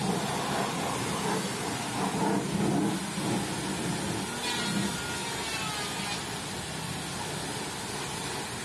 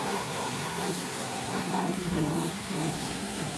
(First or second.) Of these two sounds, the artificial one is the second